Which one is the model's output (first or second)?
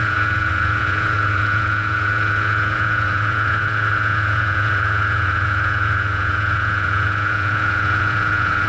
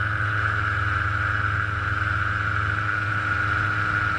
first